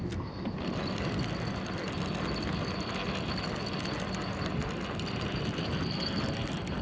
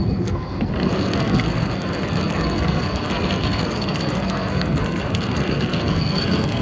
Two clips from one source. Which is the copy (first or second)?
second